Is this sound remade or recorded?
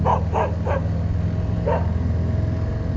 recorded